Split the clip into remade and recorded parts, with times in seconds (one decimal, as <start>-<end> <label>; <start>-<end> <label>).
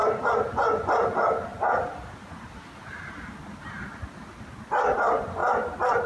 0.0-6.1 recorded